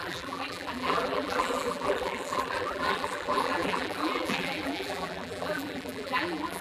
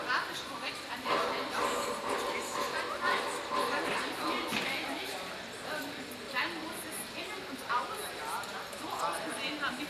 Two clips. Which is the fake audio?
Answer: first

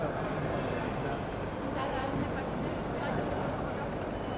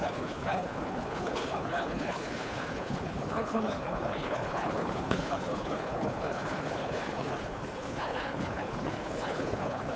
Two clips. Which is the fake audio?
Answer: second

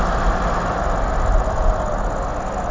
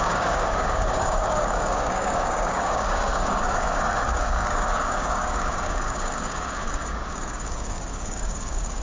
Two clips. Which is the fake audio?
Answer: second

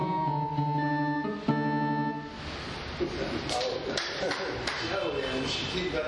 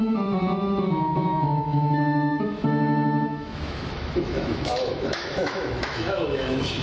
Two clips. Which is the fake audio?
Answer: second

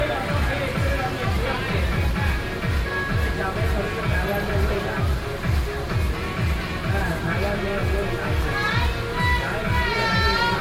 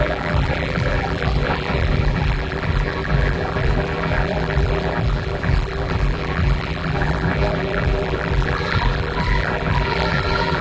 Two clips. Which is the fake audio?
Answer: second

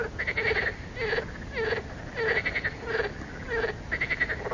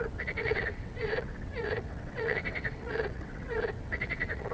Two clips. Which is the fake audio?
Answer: second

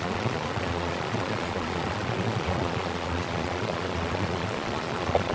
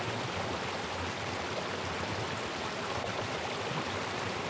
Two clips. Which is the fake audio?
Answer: first